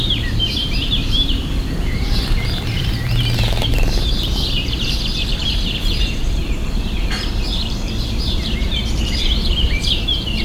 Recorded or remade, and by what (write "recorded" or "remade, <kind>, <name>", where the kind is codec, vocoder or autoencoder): remade, vocoder, BigVGAN v2